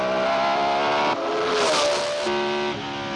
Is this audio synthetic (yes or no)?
no